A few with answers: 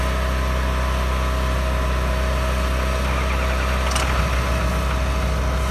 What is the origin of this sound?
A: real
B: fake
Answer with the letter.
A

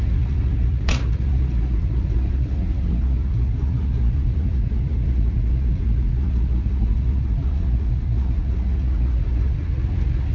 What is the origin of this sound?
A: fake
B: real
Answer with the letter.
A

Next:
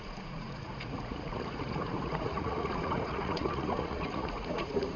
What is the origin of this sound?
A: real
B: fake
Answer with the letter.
B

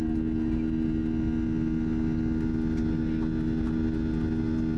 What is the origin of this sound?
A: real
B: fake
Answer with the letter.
A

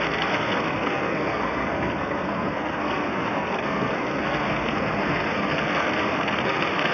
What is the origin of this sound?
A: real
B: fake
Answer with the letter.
B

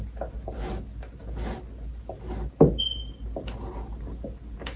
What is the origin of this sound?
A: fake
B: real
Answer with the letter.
B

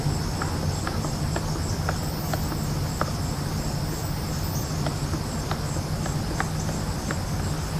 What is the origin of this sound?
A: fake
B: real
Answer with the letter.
B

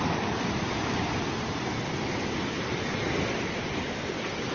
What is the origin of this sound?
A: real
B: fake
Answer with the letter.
A